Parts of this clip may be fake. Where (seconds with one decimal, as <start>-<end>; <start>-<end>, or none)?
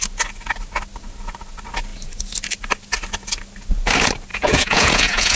4.3-5.4